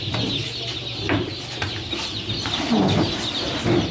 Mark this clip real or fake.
real